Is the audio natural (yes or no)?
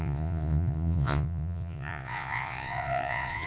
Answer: no